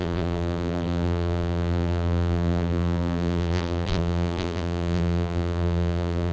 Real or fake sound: fake